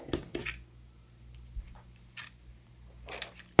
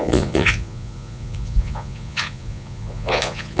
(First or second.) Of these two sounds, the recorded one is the first